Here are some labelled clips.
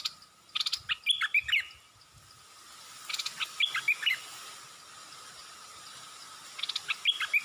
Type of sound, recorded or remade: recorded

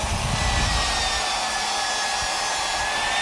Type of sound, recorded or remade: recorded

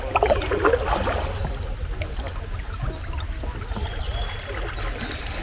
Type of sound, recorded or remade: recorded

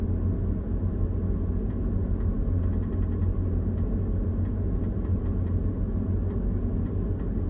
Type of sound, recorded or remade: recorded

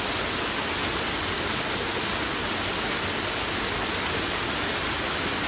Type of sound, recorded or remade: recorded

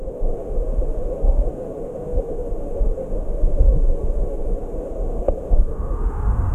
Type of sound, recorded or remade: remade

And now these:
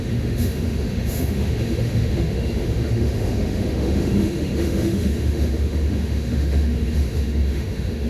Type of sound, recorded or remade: remade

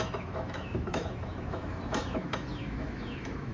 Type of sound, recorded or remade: remade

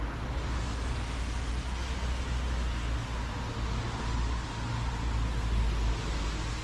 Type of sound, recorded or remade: recorded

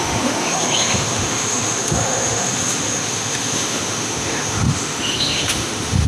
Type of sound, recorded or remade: remade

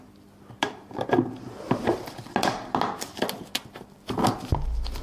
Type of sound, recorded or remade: recorded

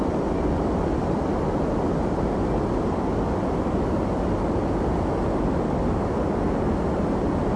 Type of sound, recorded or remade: recorded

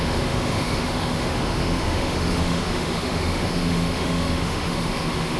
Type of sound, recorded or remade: remade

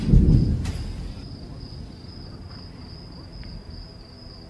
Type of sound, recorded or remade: recorded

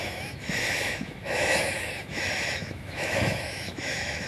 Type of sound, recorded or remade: remade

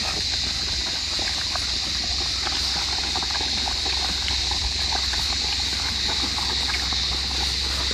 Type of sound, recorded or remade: recorded